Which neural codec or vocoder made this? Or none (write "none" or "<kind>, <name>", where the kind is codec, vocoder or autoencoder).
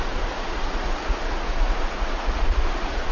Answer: vocoder, Vocos